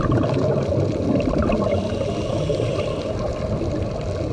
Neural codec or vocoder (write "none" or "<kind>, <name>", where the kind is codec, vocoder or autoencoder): none